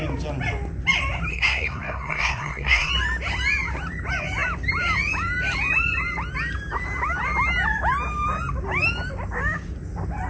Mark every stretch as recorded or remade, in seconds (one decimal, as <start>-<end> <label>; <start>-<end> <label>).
0.0-1.3 recorded; 1.3-2.9 remade; 2.9-10.3 recorded